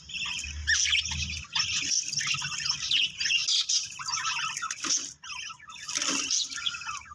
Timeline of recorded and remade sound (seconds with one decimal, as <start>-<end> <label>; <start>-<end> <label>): 0.0-7.1 recorded